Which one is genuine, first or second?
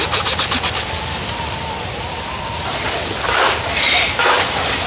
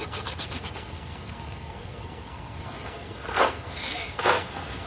first